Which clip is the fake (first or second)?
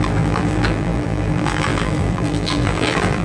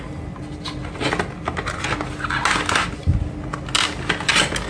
first